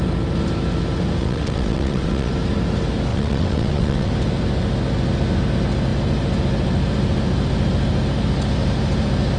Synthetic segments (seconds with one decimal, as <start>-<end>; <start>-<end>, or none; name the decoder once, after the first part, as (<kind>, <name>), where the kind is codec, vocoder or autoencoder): 1.2-2.3 (vocoder, WaveNeXt); 3.1-4.1